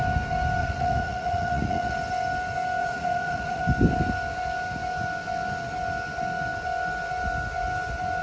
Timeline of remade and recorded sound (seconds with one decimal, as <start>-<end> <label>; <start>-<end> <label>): 0.0-0.6 recorded; 0.6-1.9 remade; 1.9-2.8 recorded; 2.8-3.6 remade; 3.6-8.2 recorded